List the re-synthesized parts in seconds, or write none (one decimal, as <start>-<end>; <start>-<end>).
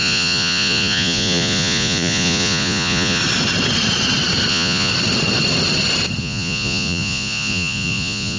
0.0-3.2; 4.5-4.9; 6.2-8.4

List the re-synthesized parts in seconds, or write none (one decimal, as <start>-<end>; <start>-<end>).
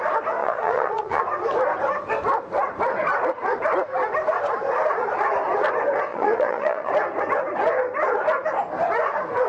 0.4-1.2; 6.1-6.9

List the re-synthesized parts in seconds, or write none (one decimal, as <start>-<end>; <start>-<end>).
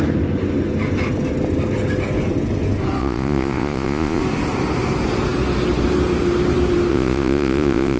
3.0-4.2; 6.9-8.0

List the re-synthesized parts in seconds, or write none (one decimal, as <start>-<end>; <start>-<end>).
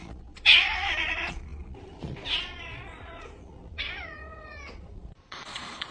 0.0-5.9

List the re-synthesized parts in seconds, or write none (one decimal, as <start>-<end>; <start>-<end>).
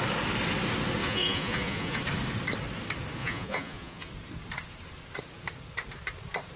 1.0-2.0; 3.2-4.1